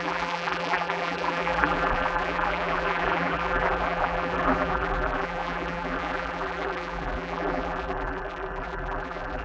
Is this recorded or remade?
remade